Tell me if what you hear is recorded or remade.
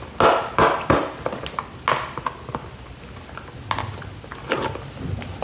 recorded